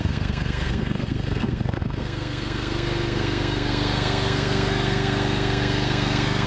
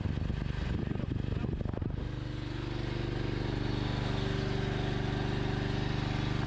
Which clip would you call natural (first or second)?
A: second